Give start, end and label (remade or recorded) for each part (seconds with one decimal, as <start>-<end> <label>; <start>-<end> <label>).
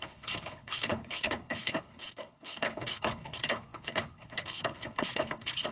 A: 0.0-5.7 remade